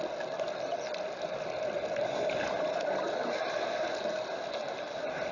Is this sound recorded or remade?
recorded